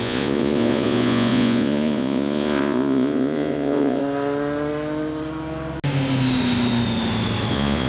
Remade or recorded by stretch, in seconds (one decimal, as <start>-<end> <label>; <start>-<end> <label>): 0.0-4.0 remade; 4.0-7.5 recorded; 7.5-7.9 remade